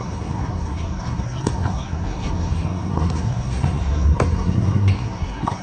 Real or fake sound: fake